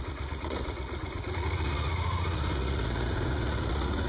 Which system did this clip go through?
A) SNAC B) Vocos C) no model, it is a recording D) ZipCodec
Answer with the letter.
B